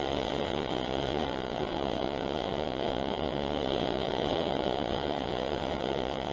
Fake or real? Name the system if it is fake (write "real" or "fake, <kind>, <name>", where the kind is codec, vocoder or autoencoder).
fake, vocoder, WaveNeXt